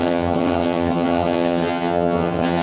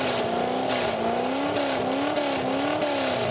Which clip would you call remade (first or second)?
first